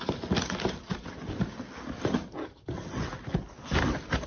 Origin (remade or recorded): recorded